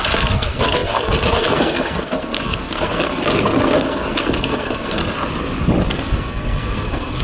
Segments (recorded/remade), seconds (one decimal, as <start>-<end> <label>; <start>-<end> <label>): 0.0-5.0 remade; 5.0-5.9 recorded; 5.9-7.2 remade